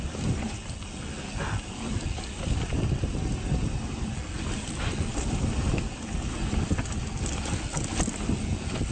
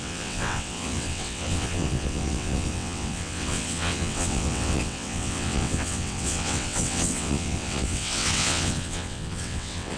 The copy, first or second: second